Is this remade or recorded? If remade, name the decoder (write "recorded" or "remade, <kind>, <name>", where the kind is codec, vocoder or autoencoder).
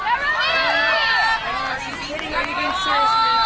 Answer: recorded